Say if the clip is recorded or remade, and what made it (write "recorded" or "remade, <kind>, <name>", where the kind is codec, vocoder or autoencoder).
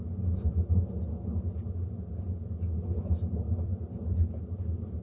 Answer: recorded